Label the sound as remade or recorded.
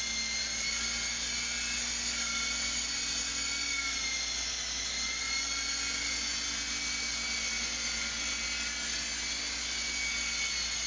recorded